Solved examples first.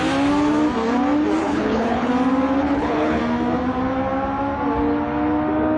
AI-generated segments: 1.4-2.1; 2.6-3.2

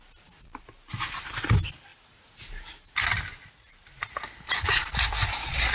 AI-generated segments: none